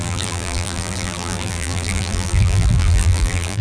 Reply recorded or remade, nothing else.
remade